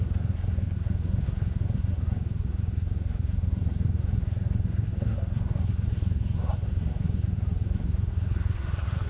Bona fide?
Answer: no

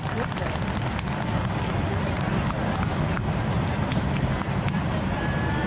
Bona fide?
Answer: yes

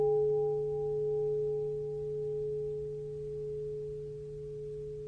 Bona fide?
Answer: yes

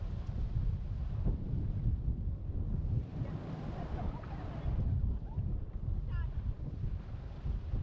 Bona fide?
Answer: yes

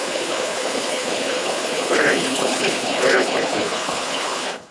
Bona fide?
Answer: no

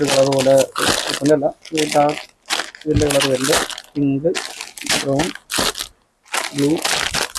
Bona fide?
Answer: yes